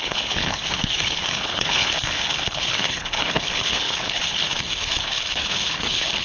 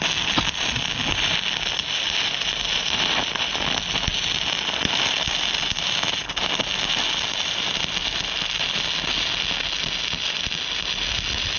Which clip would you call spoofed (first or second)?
first